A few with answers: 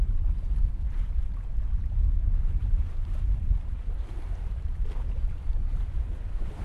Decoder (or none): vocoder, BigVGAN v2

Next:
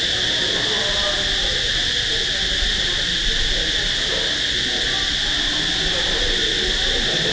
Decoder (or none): none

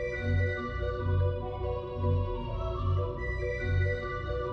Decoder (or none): none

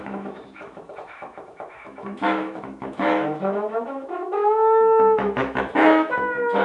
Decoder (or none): autoencoder, DAC-VAE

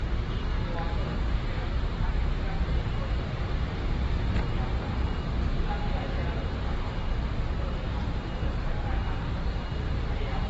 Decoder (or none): vocoder, BigVGAN v2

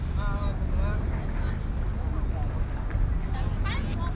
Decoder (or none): none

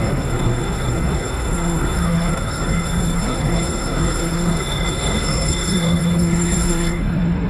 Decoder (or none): codec, SNAC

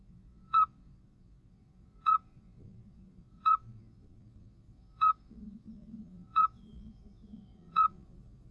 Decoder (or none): vocoder, Vocos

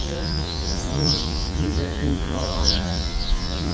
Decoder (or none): vocoder, Vocos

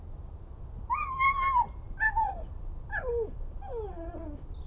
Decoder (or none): none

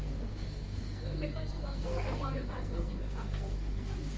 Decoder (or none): codec, SNAC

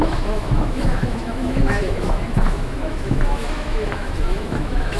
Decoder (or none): autoencoder, DAC-VAE